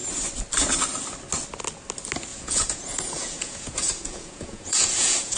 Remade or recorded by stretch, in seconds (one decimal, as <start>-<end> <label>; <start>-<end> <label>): 0.0-2.3 recorded; 2.3-5.4 remade